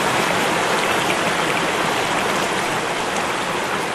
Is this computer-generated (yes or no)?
no